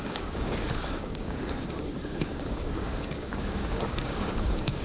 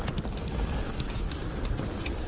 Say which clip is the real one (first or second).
second